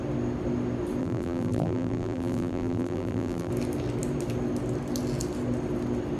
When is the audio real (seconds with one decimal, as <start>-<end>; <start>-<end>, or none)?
0.0-1.0; 3.5-6.2